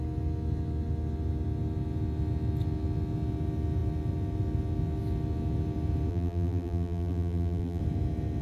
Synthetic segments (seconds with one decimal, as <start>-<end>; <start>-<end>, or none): 6.1-7.8